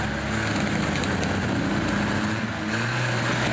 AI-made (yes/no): no